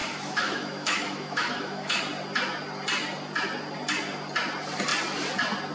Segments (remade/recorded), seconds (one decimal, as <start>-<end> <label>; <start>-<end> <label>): 0.0-2.0 remade; 2.0-5.7 recorded